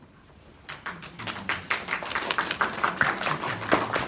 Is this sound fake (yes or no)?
no